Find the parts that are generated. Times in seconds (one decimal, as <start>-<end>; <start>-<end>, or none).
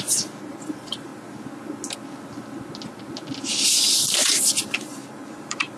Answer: 0.0-1.1; 4.4-5.8